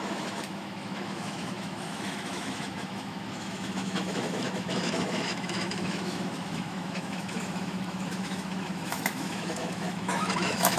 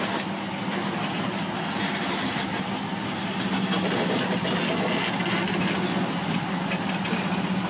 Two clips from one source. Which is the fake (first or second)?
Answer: first